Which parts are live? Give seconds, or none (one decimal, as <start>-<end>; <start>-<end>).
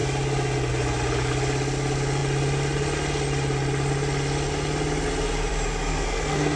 0.0-5.9